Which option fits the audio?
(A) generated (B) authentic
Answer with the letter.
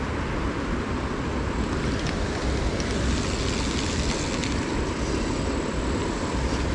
B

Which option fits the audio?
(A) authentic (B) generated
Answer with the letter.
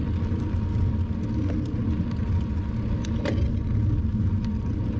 A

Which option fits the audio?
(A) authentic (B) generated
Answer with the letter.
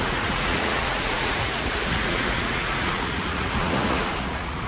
B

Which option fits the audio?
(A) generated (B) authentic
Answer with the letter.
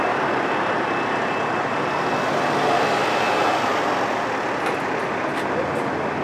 B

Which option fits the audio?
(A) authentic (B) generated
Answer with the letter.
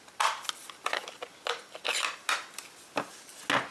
A